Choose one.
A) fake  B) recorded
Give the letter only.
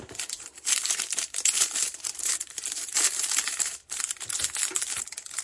A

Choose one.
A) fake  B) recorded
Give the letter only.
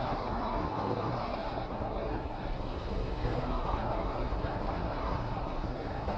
A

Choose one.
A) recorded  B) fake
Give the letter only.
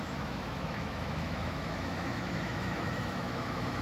B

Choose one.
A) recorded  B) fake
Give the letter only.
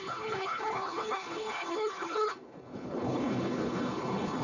B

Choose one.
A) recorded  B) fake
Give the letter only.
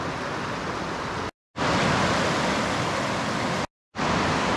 A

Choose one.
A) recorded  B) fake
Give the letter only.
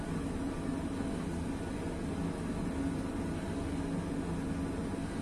A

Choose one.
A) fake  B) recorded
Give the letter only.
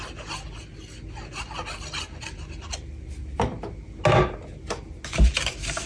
B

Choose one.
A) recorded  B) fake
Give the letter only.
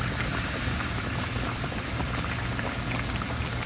A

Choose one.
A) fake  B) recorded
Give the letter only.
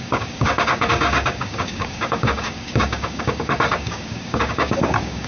A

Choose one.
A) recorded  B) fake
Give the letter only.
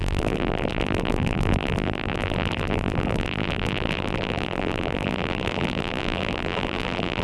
B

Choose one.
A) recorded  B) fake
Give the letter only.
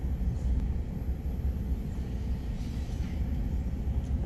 A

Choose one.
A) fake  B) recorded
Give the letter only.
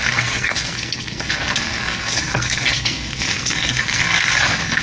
A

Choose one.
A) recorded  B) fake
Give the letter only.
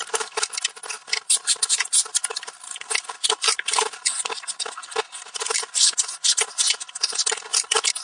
B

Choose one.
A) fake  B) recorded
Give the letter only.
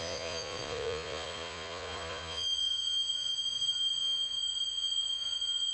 A